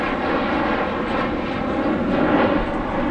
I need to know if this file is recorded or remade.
recorded